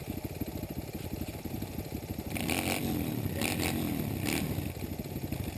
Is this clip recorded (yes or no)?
no